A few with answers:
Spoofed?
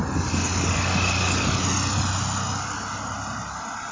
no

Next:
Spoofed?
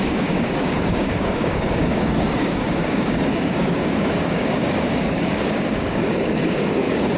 yes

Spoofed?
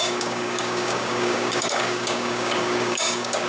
yes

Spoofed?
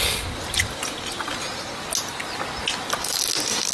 no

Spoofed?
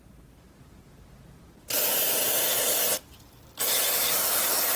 no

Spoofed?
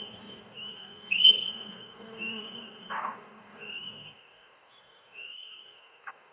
yes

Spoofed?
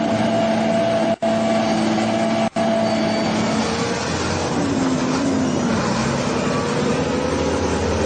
no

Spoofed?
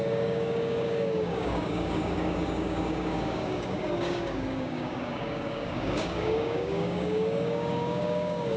yes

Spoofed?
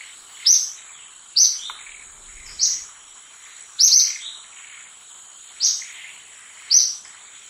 no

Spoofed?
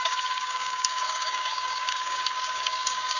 yes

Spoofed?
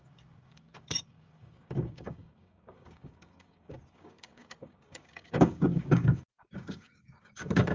yes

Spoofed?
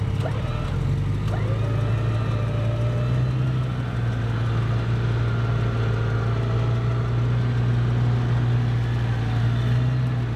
no